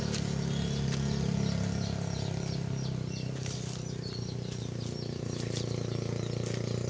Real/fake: real